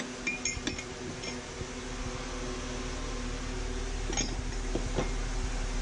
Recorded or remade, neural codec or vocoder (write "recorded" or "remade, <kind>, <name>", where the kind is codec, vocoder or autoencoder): recorded